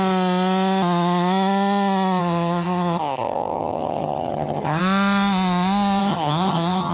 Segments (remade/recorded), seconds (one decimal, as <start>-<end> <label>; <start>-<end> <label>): 0.0-2.2 recorded; 2.2-4.8 remade; 4.8-6.0 recorded; 6.0-6.9 remade